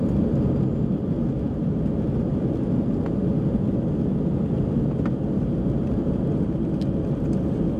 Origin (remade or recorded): recorded